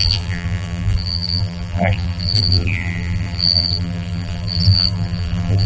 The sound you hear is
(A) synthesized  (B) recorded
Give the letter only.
A